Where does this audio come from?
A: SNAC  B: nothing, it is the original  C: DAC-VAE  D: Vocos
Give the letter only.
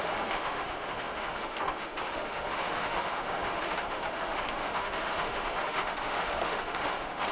C